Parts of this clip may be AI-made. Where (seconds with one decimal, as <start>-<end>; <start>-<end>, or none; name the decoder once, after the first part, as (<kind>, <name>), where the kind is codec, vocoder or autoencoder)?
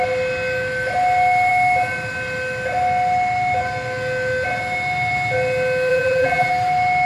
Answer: 5.9-6.5 (vocoder, BigVGAN v2)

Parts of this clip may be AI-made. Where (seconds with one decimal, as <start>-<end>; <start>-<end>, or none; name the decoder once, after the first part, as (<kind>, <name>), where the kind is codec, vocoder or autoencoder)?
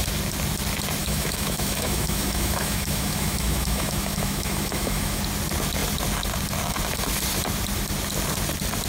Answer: 1.0-5.2 (autoencoder, DAC-VAE)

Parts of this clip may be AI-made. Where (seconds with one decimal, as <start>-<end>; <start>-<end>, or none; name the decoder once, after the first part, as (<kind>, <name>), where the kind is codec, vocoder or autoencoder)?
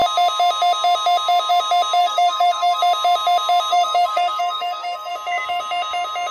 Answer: 2.0-2.8 (codec, SNAC); 3.7-5.1